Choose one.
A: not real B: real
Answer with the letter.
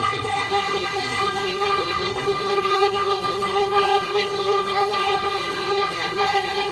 A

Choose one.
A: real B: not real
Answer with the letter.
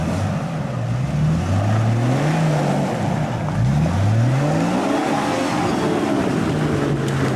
A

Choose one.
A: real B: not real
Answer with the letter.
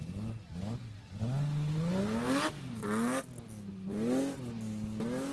A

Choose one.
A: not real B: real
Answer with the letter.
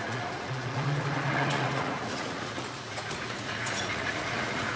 A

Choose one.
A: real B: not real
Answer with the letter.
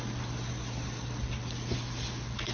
A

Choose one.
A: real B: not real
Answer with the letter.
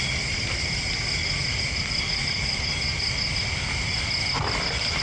A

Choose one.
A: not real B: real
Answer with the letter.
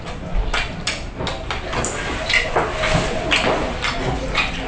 B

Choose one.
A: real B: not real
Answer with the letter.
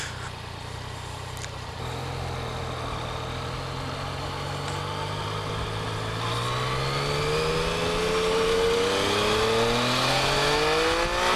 A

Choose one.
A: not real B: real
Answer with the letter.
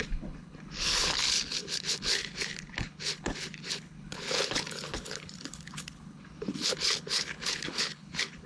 A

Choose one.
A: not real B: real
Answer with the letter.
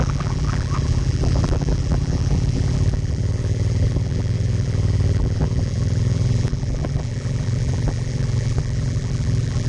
A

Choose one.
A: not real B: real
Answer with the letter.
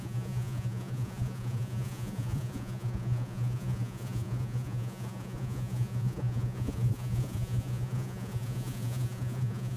A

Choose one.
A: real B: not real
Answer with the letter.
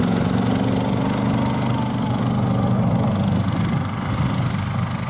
A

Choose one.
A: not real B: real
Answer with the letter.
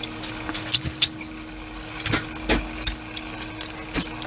B